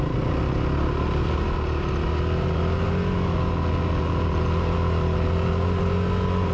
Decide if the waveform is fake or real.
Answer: real